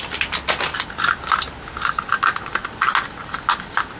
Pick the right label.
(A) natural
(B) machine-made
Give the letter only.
A